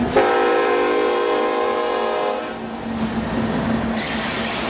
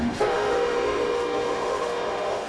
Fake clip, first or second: second